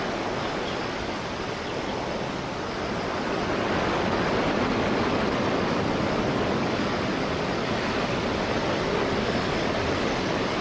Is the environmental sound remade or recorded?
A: recorded